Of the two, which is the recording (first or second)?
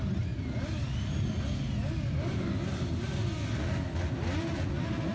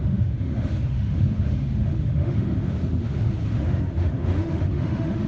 first